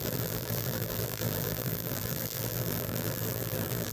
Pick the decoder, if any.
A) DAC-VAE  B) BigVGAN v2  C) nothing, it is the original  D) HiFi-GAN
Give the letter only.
B